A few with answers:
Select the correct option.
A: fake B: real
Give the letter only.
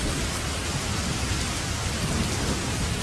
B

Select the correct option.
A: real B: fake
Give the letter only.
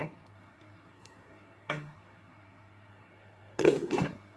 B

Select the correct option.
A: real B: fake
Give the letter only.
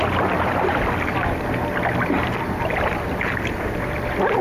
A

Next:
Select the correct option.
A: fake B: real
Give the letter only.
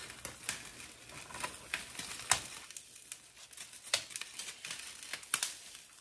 B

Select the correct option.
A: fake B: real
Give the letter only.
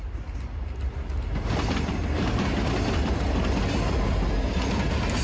B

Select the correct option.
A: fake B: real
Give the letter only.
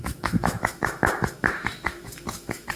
A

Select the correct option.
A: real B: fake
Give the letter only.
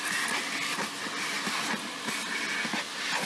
A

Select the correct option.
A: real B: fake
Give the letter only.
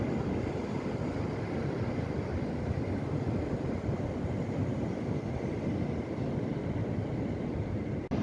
A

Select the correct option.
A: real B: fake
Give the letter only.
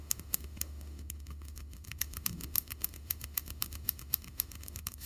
B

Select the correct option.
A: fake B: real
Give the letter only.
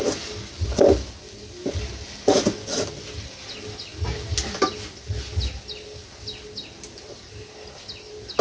B